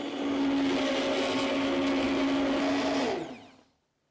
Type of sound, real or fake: real